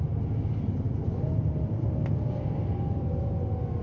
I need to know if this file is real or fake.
real